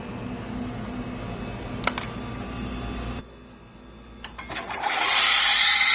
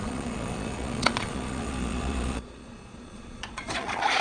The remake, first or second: second